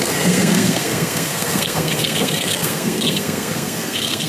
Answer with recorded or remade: remade